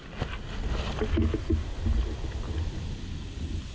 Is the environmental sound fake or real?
real